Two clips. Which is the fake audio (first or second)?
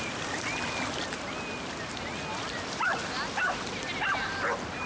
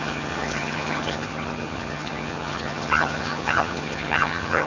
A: second